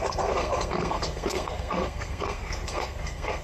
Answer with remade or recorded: remade